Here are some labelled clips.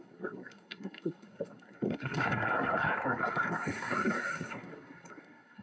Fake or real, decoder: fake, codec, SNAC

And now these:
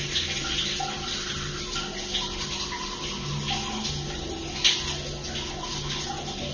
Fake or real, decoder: real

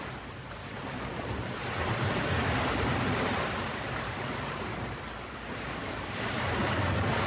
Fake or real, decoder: real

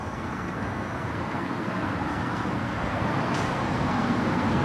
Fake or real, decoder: fake, codec, SNAC